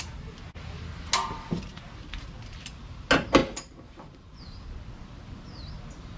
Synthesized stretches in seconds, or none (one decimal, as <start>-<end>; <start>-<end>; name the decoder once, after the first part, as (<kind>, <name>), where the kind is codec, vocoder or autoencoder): 3.4-4.4 (vocoder, BigVGAN v2)